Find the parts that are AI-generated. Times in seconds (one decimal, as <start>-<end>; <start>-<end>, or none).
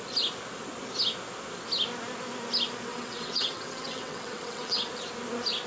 2.9-4.9